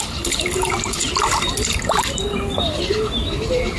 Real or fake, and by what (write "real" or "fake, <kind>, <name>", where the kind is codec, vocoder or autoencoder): real